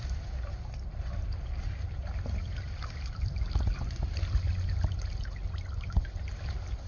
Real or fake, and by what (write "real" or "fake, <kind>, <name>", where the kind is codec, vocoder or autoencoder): real